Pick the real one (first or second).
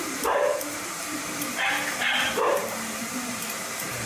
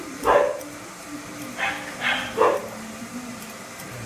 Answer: second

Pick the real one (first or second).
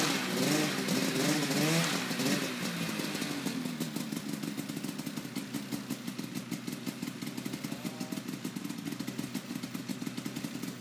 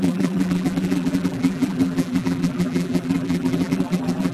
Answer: first